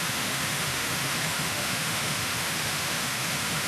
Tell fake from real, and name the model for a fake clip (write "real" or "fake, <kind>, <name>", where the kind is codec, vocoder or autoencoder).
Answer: fake, autoencoder, DAC-VAE